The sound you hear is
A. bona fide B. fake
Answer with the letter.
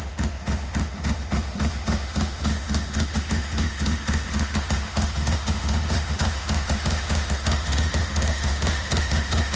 B